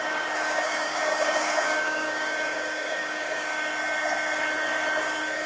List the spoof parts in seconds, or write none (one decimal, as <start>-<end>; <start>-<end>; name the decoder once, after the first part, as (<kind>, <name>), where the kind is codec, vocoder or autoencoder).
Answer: 0.0-3.7 (codec, DAC); 5.0-5.5